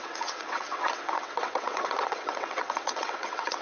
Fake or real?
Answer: fake